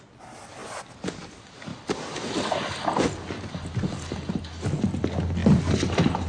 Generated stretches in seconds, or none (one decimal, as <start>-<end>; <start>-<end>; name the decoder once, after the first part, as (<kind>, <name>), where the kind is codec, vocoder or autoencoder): none